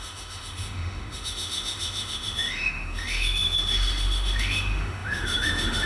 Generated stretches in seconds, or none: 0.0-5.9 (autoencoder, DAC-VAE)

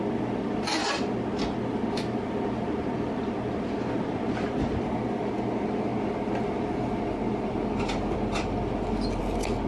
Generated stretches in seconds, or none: none

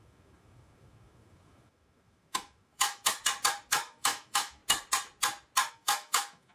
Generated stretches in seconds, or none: 0.0-3.2 (autoencoder, DAC-VAE); 3.7-4.6; 5.7-6.5

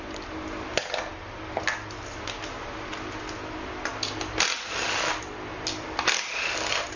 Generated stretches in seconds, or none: none

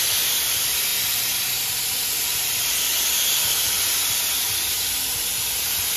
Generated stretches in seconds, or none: none

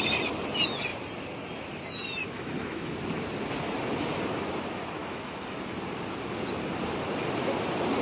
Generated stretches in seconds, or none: 2.2-2.9 (autoencoder, DAC-VAE); 5.0-5.6

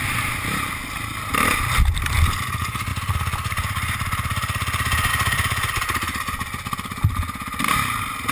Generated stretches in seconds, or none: none

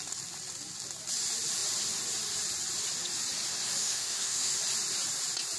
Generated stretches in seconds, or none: 3.8-4.5 (autoencoder, DAC-VAE)